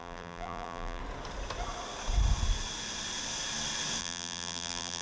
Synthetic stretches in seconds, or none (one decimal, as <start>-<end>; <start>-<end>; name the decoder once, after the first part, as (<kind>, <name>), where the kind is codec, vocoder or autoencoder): 0.0-1.0 (vocoder, BigVGAN v2); 4.0-5.0